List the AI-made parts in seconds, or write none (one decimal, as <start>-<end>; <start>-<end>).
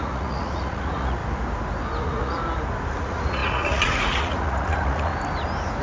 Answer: 0.0-1.2; 2.0-2.4; 3.0-5.1